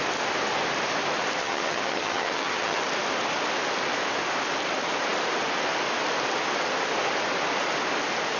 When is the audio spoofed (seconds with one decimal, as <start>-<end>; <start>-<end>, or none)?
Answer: 1.4-2.8